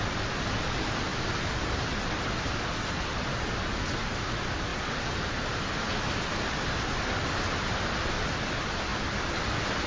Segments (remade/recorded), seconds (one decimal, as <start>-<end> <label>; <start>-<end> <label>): 0.0-4.7 recorded; 4.7-5.5 remade; 5.5-9.9 recorded